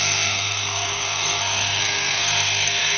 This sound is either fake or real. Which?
fake